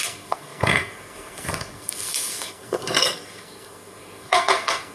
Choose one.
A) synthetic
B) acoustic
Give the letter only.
A